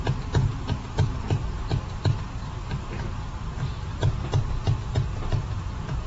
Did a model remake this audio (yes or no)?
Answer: no